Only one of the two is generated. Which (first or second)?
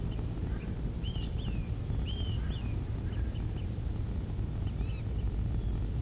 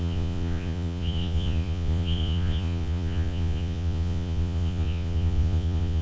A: second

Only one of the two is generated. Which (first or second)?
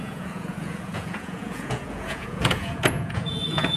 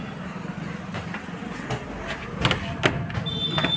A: first